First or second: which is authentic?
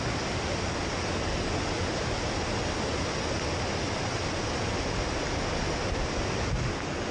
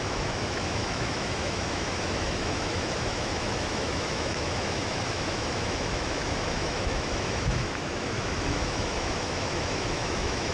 first